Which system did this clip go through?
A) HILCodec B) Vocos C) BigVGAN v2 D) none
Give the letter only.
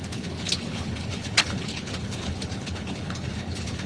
A